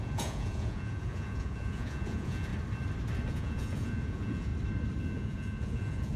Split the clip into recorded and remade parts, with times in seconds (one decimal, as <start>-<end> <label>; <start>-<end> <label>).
0.0-2.5 remade; 2.5-3.3 recorded; 3.3-4.5 remade; 4.5-5.0 recorded; 5.0-6.2 remade